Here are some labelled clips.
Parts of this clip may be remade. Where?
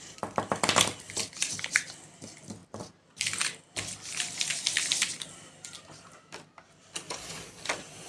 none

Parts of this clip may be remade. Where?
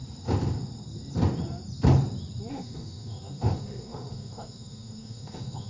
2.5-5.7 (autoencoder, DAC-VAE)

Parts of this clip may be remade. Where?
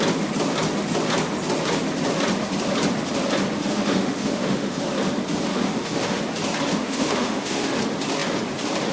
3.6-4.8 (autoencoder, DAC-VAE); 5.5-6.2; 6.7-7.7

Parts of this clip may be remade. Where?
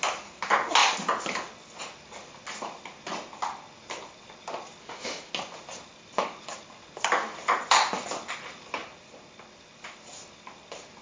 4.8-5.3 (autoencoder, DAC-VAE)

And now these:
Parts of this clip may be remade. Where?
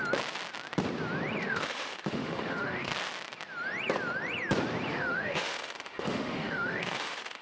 1.4-2.9 (autoencoder, DAC-VAE); 4.9-7.4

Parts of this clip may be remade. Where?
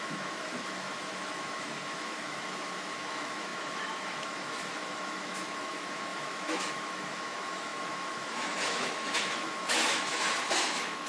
0.0-11.1 (autoencoder, DAC-VAE)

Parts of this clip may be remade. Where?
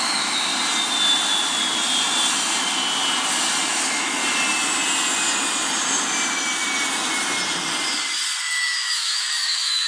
0.0-0.5 (autoencoder, DAC-VAE); 3.7-4.2; 8.4-9.9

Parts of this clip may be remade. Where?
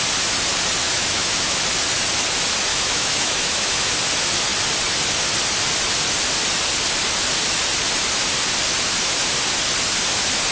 0.8-1.6 (autoencoder, DAC-VAE); 2.7-3.9